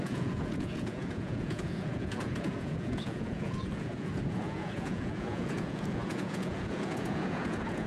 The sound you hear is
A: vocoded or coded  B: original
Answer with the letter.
A